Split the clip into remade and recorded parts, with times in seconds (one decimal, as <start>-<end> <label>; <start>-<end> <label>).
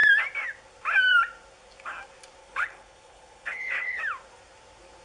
0.0-2.4 recorded; 2.4-4.0 remade; 4.0-5.0 recorded